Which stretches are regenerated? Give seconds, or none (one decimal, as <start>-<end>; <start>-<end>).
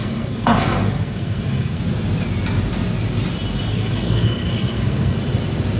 0.0-1.8; 3.7-5.2